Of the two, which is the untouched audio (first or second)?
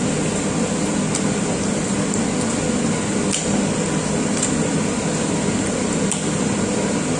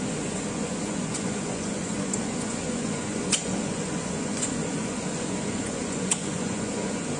first